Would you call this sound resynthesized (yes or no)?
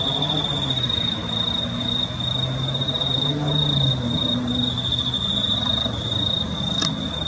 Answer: no